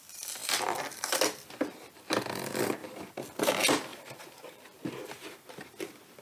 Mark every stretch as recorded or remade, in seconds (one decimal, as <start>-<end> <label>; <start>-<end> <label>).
0.0-0.4 recorded; 0.4-1.8 remade; 1.8-2.8 recorded; 2.8-3.5 remade; 3.5-3.9 recorded; 3.9-5.6 remade; 5.6-6.2 recorded